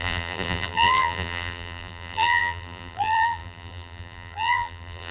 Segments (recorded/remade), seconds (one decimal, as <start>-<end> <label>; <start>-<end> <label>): 0.0-5.1 remade